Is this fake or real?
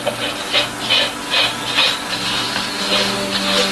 real